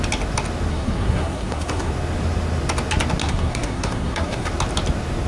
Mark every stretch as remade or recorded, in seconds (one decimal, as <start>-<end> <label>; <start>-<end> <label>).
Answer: 0.0-0.7 recorded; 0.7-1.9 remade; 1.9-3.2 recorded; 3.2-4.5 remade; 4.5-5.3 recorded